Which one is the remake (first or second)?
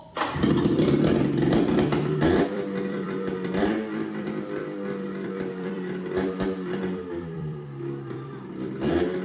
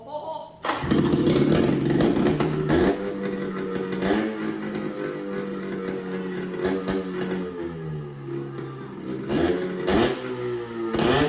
first